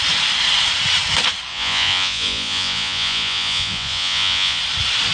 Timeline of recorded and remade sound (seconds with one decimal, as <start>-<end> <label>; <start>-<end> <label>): 0.0-1.5 recorded; 1.5-4.6 remade; 4.6-5.1 recorded